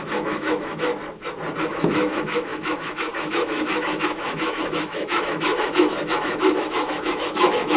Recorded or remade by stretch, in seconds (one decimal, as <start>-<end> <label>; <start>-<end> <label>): 0.0-0.9 remade; 0.9-1.6 recorded; 1.6-7.8 remade